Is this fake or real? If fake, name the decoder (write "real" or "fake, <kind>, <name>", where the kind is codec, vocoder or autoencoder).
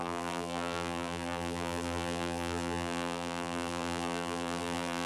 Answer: fake, vocoder, BigVGAN v2